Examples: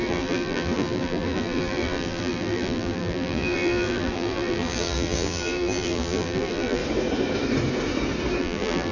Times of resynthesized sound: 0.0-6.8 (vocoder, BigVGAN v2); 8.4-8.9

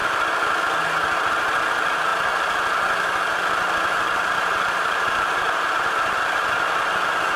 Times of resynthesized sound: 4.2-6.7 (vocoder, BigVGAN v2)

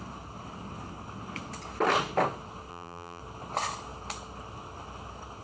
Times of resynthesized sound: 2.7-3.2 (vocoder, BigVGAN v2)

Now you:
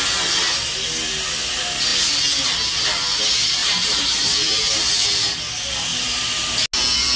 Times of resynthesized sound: 3.6-4.9 (vocoder, BigVGAN v2); 5.9-6.6